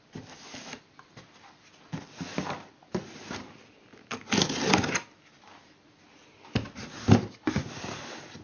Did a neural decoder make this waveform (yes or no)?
no